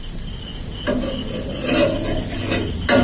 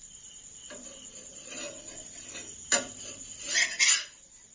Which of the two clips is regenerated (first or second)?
second